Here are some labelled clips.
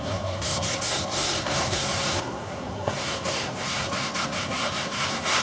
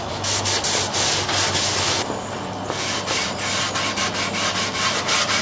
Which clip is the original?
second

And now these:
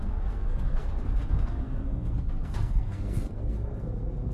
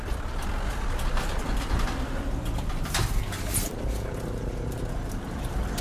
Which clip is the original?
second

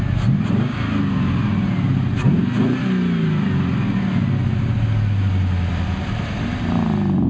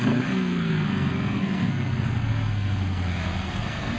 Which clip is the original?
first